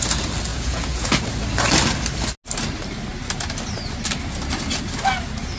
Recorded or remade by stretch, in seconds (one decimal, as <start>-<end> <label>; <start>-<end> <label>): 0.0-0.5 recorded; 0.5-1.2 remade; 1.2-5.6 recorded